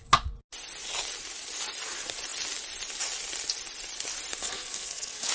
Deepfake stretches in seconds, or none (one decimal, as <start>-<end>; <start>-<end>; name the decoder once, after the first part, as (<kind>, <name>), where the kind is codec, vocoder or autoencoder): 4.4-5.3 (codec, SNAC)